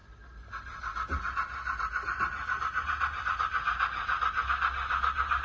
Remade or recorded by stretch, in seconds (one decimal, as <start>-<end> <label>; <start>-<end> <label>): 0.0-5.4 recorded

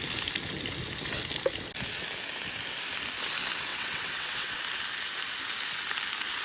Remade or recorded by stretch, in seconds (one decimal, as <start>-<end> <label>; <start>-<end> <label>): 0.0-3.7 recorded; 3.7-4.6 remade; 4.6-6.4 recorded

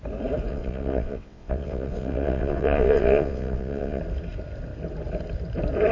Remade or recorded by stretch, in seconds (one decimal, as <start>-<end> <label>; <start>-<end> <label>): 0.0-0.5 recorded; 0.5-4.0 remade; 4.0-5.9 recorded

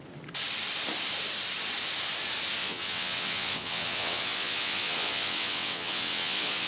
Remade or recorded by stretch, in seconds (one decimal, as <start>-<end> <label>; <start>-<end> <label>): 0.0-2.6 recorded; 2.6-6.7 remade

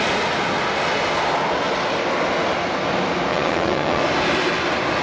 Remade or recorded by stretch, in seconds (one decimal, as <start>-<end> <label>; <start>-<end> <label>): 0.0-3.3 recorded; 3.3-4.0 remade; 4.0-5.0 recorded